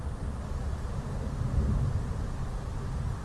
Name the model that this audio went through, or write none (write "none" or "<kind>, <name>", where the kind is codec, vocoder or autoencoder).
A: none